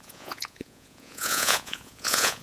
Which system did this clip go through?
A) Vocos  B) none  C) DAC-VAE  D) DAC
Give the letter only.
A